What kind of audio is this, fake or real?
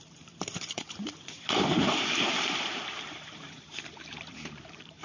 fake